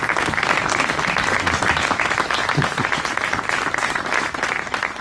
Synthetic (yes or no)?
no